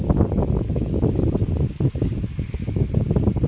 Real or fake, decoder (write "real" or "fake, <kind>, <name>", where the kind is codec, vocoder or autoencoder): real